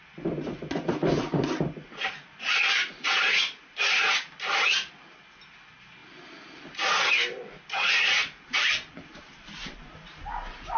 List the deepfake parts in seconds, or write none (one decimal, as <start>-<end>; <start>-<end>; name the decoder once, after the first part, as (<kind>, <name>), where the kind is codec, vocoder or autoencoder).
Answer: none